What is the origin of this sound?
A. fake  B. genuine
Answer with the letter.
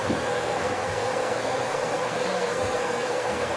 A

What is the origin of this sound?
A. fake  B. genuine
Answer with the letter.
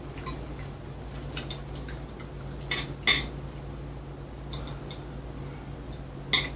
B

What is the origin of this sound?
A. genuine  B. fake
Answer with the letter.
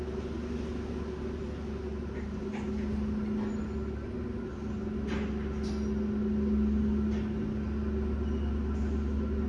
A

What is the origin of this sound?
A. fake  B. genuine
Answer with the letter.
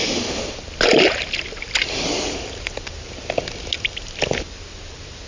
B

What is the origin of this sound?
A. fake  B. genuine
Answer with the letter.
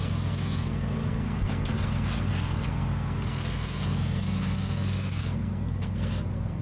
A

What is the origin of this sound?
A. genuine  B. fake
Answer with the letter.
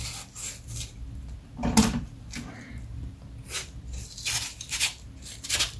A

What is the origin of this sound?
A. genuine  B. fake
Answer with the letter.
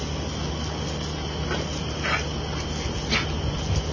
A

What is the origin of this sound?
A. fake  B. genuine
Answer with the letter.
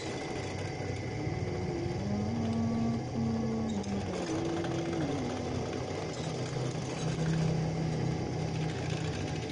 B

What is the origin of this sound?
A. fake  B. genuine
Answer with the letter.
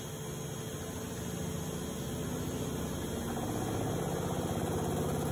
B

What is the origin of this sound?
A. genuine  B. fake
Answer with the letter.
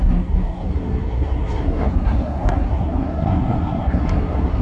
B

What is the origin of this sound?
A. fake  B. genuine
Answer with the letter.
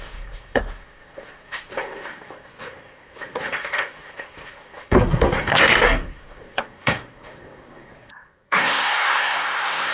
A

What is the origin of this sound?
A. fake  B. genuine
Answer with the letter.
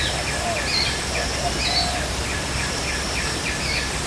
B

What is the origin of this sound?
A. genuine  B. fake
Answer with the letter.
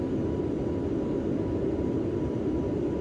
A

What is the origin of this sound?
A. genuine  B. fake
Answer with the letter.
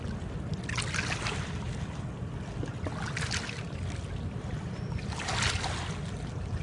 A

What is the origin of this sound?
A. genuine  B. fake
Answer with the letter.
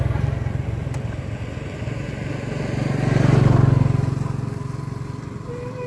A